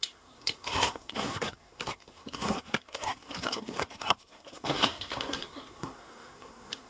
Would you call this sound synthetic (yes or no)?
yes